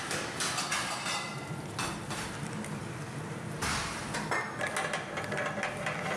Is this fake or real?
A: real